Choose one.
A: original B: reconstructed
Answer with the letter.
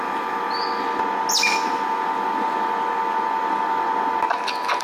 A